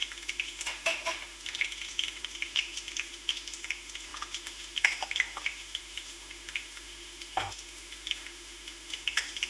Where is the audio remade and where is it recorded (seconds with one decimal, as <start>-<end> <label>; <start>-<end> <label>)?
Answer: 0.0-9.5 remade

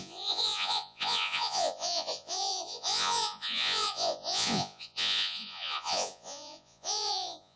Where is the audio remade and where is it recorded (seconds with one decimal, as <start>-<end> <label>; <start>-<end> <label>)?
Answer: 0.0-7.6 remade